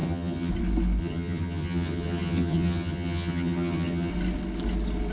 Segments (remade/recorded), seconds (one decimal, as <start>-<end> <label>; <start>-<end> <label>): 0.0-0.5 remade; 0.5-1.0 recorded; 1.0-4.1 remade; 4.1-5.1 recorded